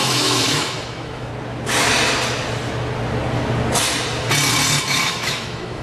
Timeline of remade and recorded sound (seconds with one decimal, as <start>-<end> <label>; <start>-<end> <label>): 0.0-1.3 remade; 1.3-4.8 recorded; 4.8-5.8 remade